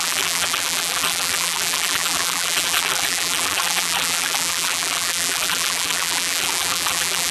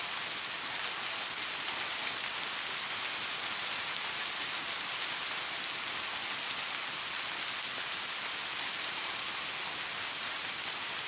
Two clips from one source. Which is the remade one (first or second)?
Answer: first